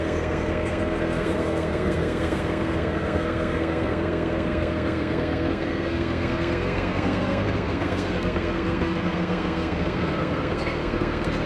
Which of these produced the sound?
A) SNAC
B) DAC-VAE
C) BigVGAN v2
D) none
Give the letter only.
A